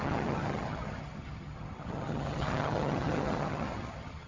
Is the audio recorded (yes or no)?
no